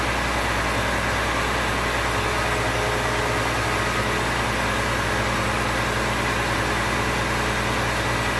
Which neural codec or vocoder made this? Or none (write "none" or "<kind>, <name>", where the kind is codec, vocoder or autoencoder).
none